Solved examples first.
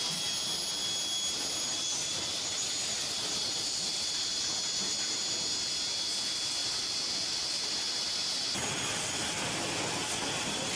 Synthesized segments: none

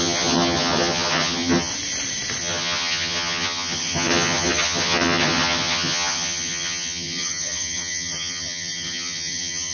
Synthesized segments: 0.0-1.7 (vocoder, HiFi-GAN); 2.4-9.7

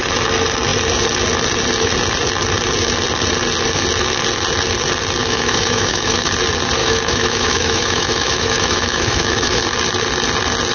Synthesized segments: 5.2-6.3 (autoencoder, DAC-VAE); 6.8-9.6

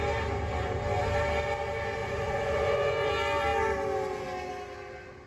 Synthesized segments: 2.0-3.1 (vocoder, Vocos)

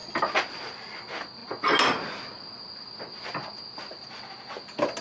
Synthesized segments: none

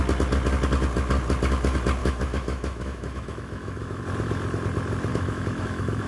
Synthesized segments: 2.0-4.0 (autoencoder, DAC-VAE); 5.1-6.1